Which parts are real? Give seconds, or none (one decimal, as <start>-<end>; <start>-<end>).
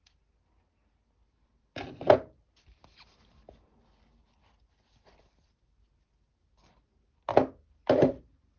0.0-1.6; 2.8-8.6